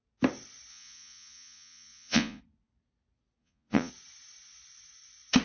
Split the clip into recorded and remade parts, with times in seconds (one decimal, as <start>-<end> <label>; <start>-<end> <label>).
0.0-0.7 recorded; 0.7-2.4 remade; 2.4-3.4 recorded; 3.4-3.9 remade; 3.9-5.4 recorded